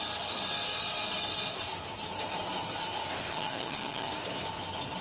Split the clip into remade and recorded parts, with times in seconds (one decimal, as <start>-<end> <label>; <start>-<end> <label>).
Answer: 0.0-3.3 recorded; 3.3-4.1 remade; 4.1-5.0 recorded